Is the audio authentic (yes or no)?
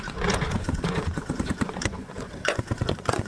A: no